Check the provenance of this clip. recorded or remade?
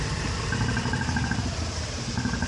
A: recorded